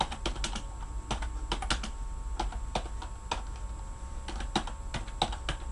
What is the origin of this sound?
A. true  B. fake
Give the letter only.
A